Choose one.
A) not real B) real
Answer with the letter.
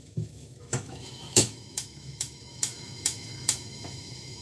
A